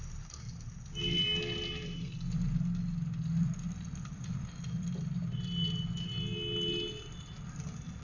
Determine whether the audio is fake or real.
real